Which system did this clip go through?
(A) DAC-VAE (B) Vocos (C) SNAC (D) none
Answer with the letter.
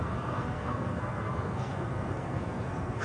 C